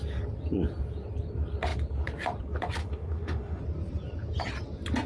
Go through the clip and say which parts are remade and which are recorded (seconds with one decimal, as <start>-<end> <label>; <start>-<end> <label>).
0.0-2.8 recorded; 2.8-3.6 remade; 3.6-5.1 recorded